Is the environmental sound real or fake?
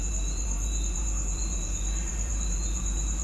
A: fake